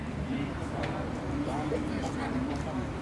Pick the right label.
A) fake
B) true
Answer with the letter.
A